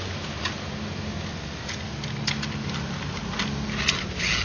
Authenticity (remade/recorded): recorded